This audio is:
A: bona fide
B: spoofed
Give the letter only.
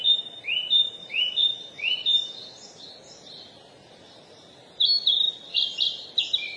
A